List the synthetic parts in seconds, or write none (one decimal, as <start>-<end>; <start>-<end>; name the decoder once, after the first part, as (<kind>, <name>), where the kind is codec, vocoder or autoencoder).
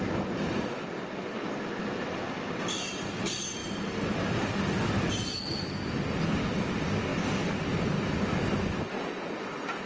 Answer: none